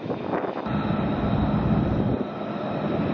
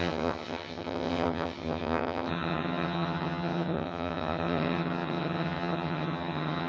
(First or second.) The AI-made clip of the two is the second